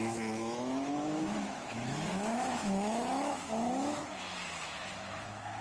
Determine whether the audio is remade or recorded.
remade